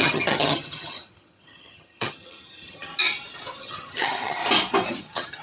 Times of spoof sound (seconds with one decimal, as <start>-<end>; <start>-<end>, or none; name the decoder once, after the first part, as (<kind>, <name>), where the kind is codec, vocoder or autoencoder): 0.0-2.9 (vocoder, HiFi-GAN); 3.6-4.4; 5.0-5.4